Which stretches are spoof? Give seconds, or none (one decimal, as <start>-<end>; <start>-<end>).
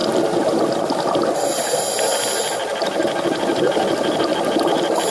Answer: none